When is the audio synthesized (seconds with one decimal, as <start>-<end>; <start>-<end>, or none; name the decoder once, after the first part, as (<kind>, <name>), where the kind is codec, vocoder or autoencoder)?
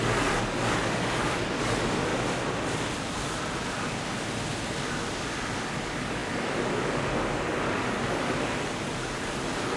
0.0-2.1 (codec, DAC); 5.8-9.8